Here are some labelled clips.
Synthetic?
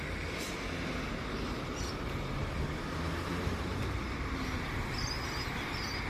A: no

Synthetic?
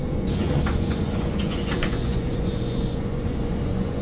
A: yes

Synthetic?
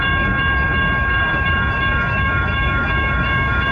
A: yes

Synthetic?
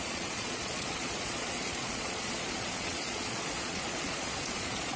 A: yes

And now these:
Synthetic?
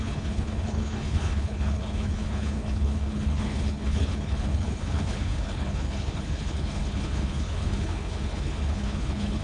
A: yes